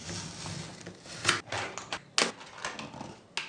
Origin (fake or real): real